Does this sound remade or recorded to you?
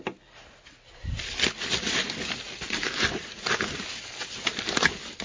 recorded